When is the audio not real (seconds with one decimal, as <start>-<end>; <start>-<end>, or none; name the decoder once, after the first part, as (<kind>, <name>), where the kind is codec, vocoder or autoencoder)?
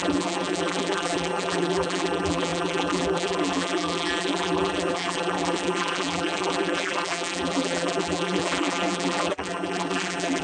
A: 0.0-10.4 (vocoder, BigVGAN v2)